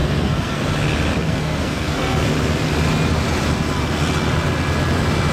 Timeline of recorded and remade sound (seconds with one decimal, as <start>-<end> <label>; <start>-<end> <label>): 0.0-0.7 remade; 0.7-1.2 recorded; 1.2-2.3 remade; 2.3-5.3 recorded

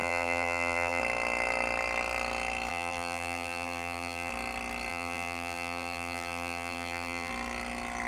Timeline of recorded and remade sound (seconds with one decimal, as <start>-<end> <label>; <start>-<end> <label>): 0.0-1.0 remade; 1.0-2.7 recorded; 2.7-4.3 remade; 4.3-4.9 recorded; 4.9-7.3 remade; 7.3-8.1 recorded

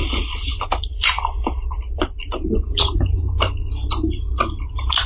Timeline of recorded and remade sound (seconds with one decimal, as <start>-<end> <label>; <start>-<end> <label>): 0.0-5.1 remade

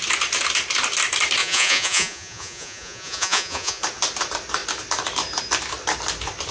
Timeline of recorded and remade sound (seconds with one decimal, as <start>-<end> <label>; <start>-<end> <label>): 0.0-1.4 recorded; 1.4-3.8 remade; 3.8-6.5 recorded

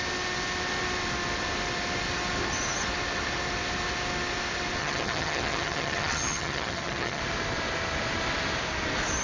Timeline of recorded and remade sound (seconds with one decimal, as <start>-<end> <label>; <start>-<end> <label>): 0.0-4.8 recorded; 4.8-7.2 remade; 7.2-9.2 recorded

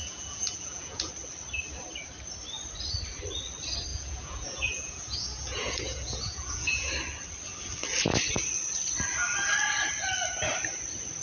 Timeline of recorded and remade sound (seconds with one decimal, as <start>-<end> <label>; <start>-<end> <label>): 0.0-1.1 remade; 1.1-3.9 recorded; 3.9-6.9 remade; 6.9-11.2 recorded

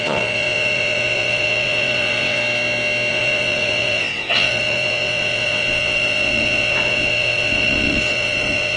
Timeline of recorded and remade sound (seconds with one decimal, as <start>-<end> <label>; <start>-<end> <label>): 0.0-2.4 remade; 2.4-3.1 recorded; 3.1-8.8 remade

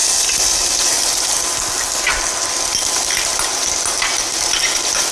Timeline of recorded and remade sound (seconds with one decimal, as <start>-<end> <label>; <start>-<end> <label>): 0.0-5.1 recorded